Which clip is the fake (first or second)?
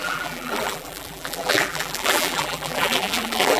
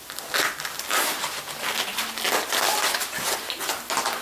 first